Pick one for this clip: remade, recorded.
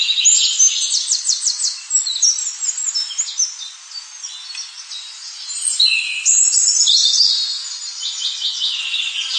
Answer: recorded